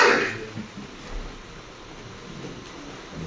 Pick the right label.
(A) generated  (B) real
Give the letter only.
B